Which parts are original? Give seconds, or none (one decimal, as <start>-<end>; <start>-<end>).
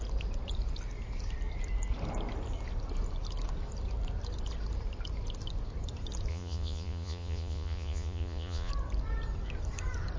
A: 0.0-6.3; 8.7-10.2